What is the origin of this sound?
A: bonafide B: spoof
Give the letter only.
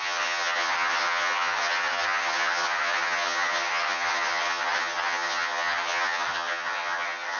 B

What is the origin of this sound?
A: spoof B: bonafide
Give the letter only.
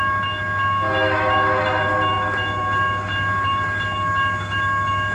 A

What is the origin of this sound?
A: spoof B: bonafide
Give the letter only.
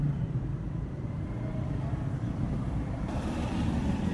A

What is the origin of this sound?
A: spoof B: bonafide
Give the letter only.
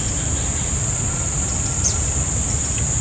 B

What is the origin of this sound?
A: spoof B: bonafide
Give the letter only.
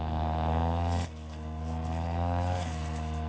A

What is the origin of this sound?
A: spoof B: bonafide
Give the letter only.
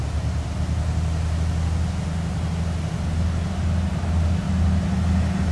B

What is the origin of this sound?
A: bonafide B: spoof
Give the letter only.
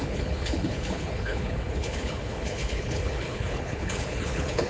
B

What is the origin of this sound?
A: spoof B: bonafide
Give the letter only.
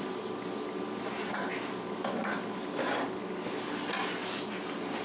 B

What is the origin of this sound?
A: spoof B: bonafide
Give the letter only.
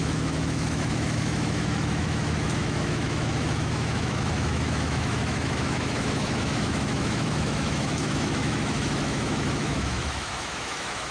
A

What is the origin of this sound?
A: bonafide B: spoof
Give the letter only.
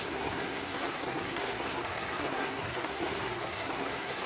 B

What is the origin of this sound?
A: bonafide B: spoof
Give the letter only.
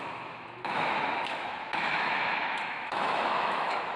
B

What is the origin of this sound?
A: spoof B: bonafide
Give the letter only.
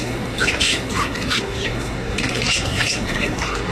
A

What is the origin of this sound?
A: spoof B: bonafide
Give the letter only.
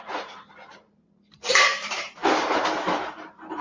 A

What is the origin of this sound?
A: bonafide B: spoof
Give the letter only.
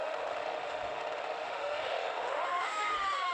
B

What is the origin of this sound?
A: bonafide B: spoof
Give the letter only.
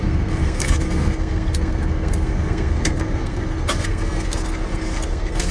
B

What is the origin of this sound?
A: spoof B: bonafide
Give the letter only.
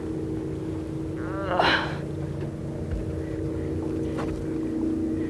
B